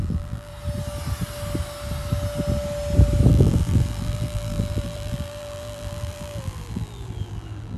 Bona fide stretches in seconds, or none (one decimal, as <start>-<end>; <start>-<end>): 0.5-3.3